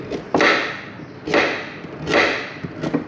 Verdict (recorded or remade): recorded